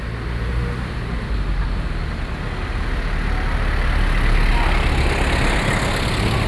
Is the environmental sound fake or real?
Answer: real